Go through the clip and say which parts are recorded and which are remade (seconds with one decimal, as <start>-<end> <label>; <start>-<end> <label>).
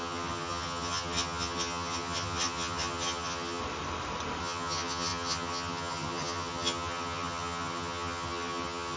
0.0-3.6 remade; 3.6-4.4 recorded; 4.4-9.0 remade